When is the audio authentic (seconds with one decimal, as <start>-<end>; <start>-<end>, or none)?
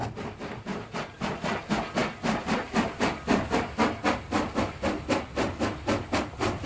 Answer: 0.0-0.7; 1.3-6.7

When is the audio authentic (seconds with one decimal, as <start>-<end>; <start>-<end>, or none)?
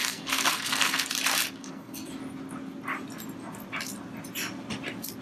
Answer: 1.1-1.6; 2.1-5.2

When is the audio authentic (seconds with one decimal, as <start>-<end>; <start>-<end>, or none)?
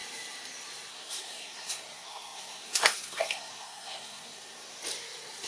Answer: 0.0-0.9; 4.8-5.5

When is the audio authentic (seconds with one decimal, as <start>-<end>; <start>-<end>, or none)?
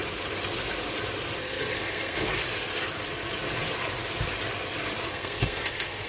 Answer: 0.0-1.4; 2.3-5.1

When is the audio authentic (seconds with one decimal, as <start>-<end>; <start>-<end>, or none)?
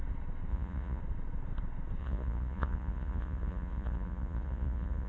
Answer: 0.0-0.5; 1.0-2.0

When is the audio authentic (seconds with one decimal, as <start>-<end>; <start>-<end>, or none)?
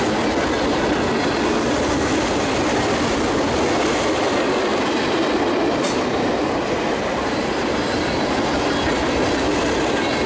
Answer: 0.0-10.3